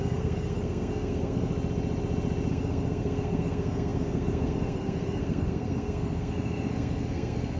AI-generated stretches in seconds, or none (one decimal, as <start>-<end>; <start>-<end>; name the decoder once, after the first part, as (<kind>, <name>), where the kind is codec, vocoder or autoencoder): 0.0-1.5 (codec, SNAC); 2.5-7.6